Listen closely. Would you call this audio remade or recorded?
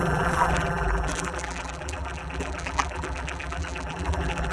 remade